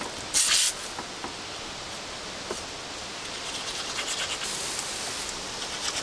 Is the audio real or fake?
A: real